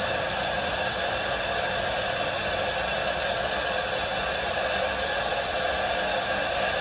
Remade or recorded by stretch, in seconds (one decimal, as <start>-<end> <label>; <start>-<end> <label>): 0.0-6.8 recorded